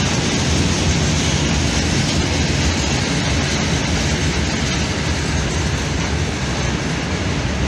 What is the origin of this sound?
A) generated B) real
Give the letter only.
B